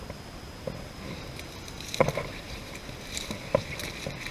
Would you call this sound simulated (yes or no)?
no